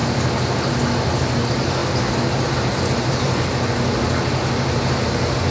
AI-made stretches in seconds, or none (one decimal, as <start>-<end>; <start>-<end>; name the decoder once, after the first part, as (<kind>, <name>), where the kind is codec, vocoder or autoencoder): none